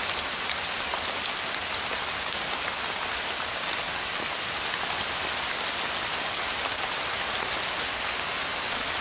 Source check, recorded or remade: recorded